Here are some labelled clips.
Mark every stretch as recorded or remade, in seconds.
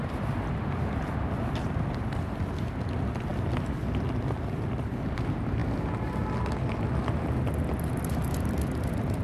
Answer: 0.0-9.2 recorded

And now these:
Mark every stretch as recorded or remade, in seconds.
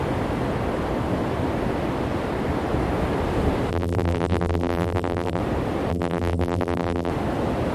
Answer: 0.0-3.7 recorded; 3.7-5.4 remade; 5.4-5.9 recorded; 5.9-7.1 remade; 7.1-7.7 recorded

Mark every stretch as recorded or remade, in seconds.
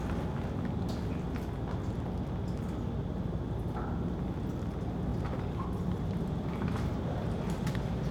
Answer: 0.0-5.1 recorded; 5.1-8.1 remade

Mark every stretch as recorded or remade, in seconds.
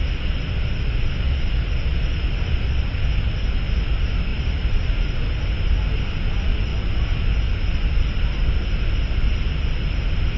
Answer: 0.0-1.9 recorded; 1.9-2.6 remade; 2.6-4.3 recorded; 4.3-5.0 remade; 5.0-10.4 recorded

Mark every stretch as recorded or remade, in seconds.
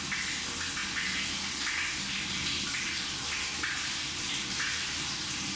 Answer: 0.0-4.7 recorded; 4.7-5.6 remade